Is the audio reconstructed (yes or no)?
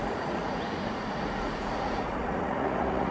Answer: yes